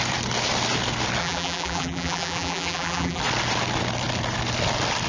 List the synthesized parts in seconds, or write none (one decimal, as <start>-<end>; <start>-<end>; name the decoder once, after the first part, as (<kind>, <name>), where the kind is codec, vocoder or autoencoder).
1.2-3.2 (vocoder, BigVGAN v2)